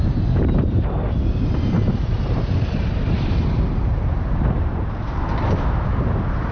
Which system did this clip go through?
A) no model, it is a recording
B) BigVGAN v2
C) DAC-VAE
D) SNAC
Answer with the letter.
B